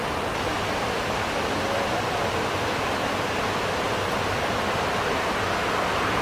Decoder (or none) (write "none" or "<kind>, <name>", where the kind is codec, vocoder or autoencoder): none